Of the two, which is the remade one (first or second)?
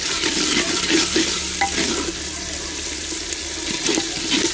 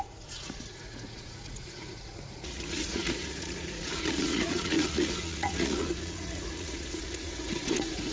second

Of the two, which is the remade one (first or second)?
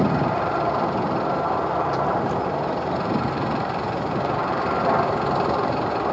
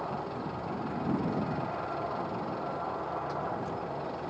first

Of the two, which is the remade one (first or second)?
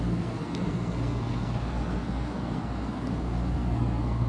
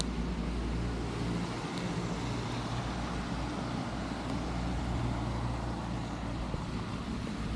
first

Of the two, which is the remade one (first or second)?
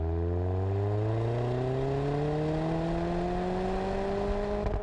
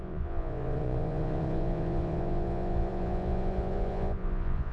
second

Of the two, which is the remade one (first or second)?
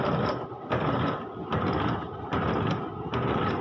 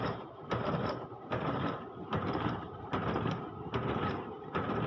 second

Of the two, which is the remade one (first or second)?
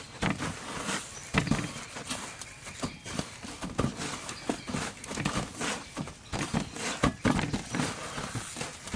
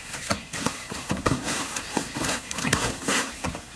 second